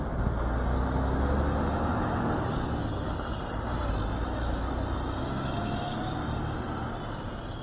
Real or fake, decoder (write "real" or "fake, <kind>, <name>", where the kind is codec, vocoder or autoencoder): real